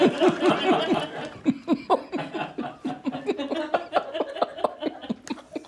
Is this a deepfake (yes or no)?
no